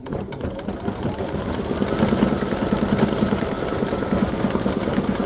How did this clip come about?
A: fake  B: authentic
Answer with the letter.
A